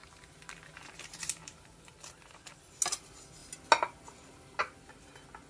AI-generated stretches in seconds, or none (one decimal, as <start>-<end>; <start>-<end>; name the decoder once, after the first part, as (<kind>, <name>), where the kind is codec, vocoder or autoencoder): 0.0-1.9 (vocoder, BigVGAN v2)